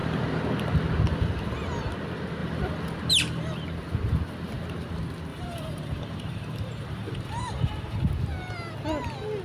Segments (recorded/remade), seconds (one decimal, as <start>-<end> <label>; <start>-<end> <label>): 0.0-5.3 recorded; 5.3-8.1 remade; 8.1-9.4 recorded